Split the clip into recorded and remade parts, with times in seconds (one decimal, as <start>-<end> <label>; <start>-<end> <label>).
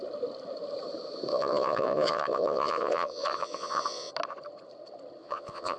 0.0-1.3 recorded; 1.3-4.1 remade; 4.1-5.2 recorded; 5.2-5.8 remade